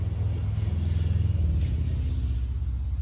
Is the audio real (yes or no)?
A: yes